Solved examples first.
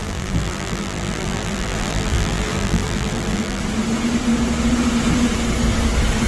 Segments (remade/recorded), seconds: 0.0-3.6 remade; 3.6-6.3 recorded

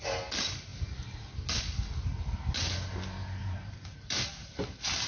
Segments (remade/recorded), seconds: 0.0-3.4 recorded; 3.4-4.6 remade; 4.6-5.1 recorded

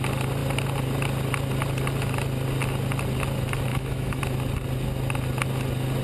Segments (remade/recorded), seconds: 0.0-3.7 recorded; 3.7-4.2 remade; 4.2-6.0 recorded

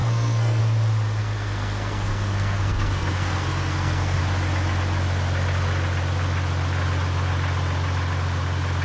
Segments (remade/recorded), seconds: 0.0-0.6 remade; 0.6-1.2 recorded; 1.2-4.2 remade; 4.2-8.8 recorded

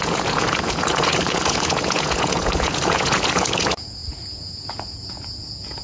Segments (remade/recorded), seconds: 0.0-5.8 remade

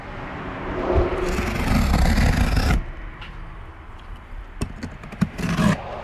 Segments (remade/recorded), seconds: 0.0-6.0 recorded

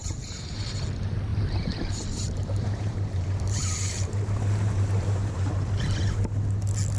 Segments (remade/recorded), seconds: 0.0-0.6 remade; 0.6-1.3 recorded; 1.3-5.5 remade; 5.5-7.0 recorded